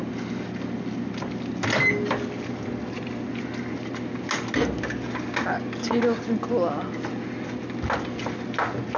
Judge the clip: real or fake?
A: real